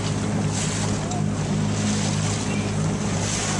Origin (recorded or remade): recorded